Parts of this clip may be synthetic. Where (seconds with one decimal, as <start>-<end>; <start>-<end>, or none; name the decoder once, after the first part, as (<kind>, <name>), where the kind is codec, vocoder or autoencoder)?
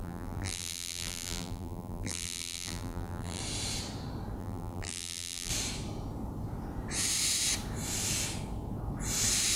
0.0-3.4 (vocoder, BigVGAN v2); 4.4-5.5